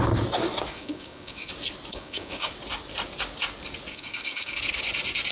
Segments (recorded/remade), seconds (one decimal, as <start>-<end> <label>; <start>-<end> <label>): 0.0-0.7 recorded; 0.7-1.5 remade; 1.5-1.9 recorded; 1.9-2.5 remade; 2.5-3.9 recorded; 3.9-4.6 remade; 4.6-5.3 recorded